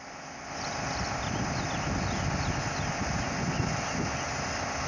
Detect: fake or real real